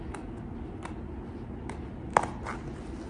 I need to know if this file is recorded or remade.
recorded